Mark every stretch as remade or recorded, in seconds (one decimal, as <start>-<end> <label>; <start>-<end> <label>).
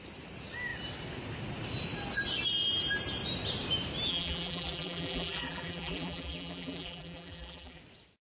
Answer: 0.0-4.1 recorded; 4.1-7.8 remade; 7.8-8.3 recorded